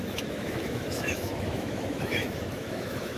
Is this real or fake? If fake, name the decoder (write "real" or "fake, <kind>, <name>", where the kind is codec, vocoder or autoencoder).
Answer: fake, autoencoder, DAC-VAE